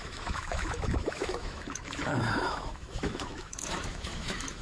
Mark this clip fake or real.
fake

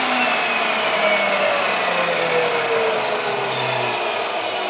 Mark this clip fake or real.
real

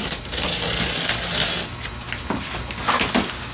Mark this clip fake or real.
real